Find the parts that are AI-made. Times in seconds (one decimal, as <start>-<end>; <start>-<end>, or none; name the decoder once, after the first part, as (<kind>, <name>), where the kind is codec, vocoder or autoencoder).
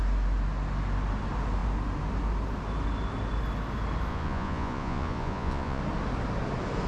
4.1-5.8 (vocoder, Vocos)